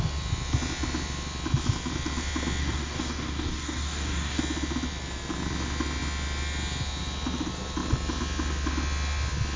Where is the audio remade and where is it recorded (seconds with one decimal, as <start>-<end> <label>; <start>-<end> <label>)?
0.0-2.6 recorded; 2.6-4.4 remade; 4.4-9.6 recorded